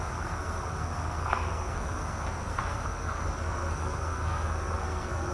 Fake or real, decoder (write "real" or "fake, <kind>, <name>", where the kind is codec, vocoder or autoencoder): fake, codec, SNAC